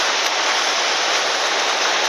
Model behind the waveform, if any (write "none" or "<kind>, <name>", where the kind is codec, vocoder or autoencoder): vocoder, BigVGAN v2